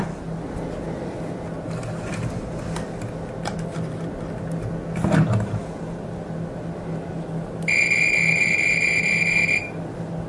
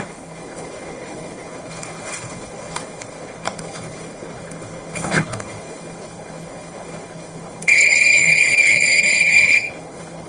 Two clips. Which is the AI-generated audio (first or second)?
second